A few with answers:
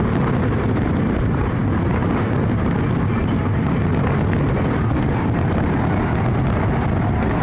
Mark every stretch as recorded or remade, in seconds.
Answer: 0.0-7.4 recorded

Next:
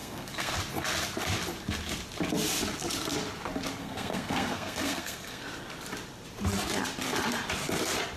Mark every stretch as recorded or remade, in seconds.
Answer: 0.0-0.5 remade; 0.5-3.8 recorded; 3.8-5.4 remade; 5.4-8.2 recorded